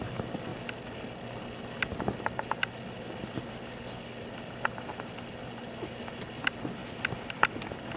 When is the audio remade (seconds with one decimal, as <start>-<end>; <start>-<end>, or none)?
none